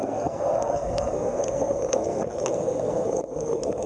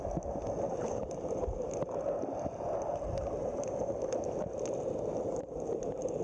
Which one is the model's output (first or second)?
first